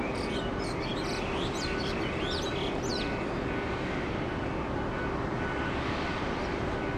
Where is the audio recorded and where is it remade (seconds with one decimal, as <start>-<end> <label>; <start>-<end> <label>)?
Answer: 0.0-7.0 recorded